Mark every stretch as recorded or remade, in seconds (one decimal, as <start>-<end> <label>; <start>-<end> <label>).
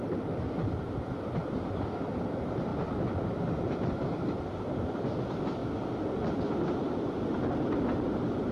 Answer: 0.0-8.5 recorded